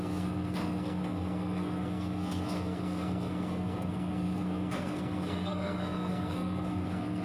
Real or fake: fake